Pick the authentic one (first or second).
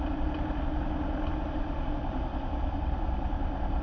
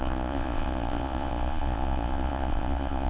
first